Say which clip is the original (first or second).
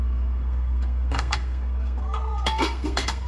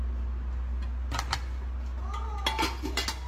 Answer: second